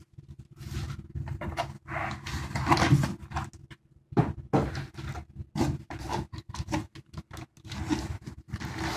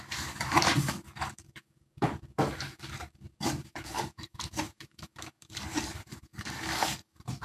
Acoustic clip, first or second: first